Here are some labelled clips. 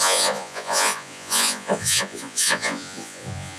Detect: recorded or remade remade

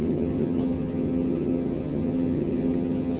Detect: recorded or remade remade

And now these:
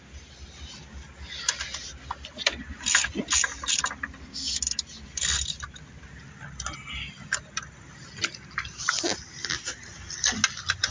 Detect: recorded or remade recorded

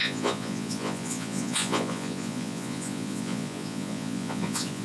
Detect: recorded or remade remade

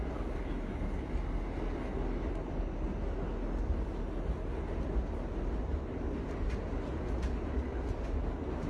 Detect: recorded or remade recorded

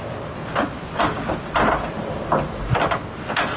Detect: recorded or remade recorded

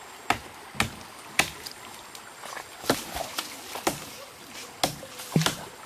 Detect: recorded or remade recorded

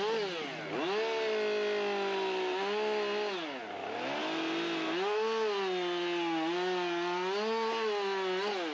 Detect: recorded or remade recorded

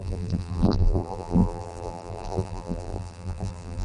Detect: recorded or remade remade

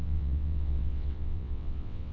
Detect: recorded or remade remade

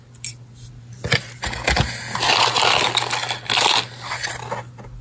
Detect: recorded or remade recorded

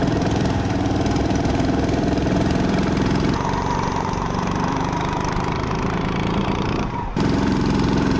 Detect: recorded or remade remade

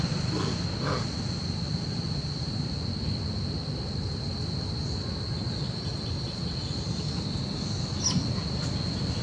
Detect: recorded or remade recorded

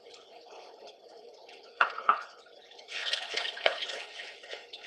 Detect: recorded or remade remade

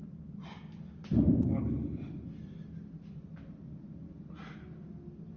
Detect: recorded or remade recorded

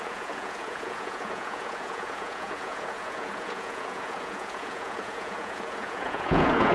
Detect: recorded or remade remade